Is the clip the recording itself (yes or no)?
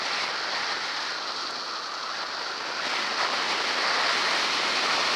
yes